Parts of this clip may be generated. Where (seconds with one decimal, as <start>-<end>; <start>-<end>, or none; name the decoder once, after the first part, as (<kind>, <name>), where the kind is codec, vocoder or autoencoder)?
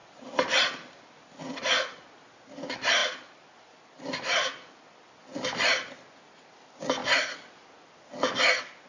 0.0-1.7 (vocoder, BigVGAN v2); 3.0-4.7